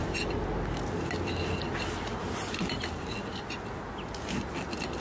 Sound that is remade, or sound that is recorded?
recorded